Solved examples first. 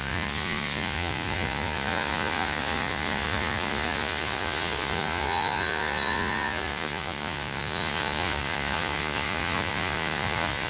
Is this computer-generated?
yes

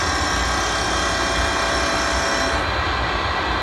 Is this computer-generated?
no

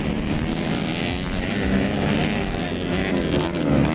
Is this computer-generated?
no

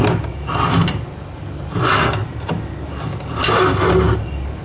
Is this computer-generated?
no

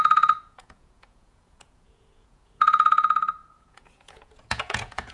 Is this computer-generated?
yes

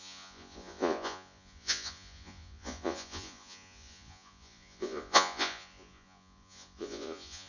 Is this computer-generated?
yes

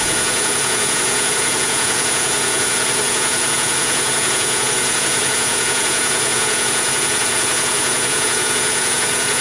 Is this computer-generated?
yes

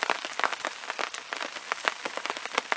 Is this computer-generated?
no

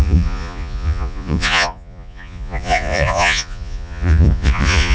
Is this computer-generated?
yes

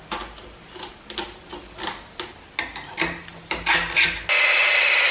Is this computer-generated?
no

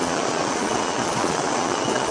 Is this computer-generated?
yes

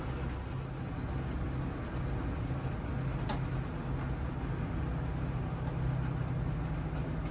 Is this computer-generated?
no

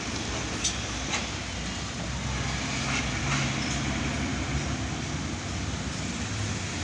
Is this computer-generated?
no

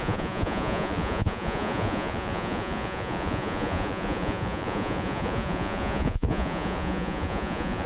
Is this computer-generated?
yes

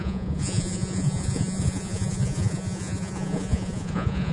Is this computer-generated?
yes